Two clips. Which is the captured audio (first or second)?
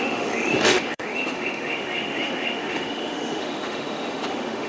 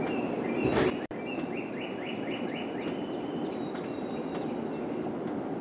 second